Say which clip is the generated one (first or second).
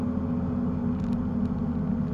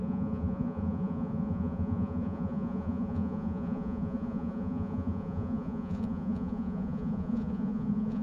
second